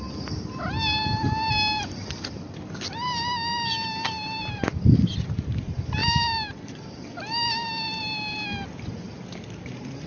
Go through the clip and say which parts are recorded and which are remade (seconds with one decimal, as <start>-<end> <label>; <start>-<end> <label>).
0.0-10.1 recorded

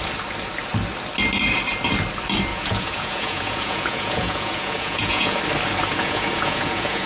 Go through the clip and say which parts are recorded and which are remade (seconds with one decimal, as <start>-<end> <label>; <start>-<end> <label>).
0.0-2.5 recorded; 2.5-5.4 remade; 5.4-5.9 recorded; 5.9-7.1 remade

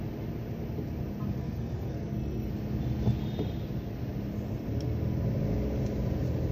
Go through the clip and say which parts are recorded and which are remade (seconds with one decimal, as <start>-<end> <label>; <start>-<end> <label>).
0.0-1.4 recorded; 1.4-2.5 remade; 2.5-6.5 recorded